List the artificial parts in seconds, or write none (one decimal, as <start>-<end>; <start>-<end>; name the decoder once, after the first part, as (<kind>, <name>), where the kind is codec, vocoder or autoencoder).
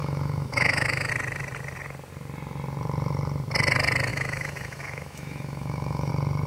0.0-1.1 (autoencoder, DAC-VAE); 4.1-6.1